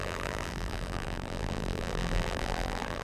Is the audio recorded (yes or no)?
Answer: no